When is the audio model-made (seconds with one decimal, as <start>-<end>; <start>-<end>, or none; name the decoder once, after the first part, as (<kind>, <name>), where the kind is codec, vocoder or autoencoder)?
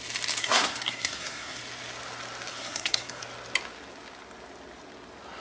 0.4-1.6 (codec, SNAC); 2.5-3.2